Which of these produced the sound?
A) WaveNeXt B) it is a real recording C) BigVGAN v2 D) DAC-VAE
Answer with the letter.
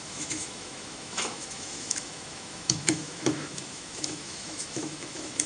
D